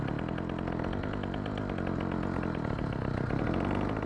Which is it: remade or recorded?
recorded